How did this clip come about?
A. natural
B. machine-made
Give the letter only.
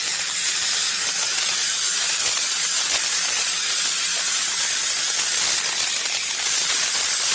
A